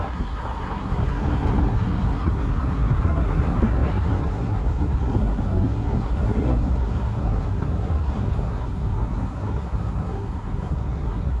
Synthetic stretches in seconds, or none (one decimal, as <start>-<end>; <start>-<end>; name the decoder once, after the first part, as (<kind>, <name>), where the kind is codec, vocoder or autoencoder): 0.0-11.4 (codec, SNAC)